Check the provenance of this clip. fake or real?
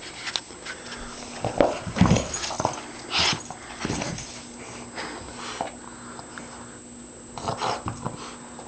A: real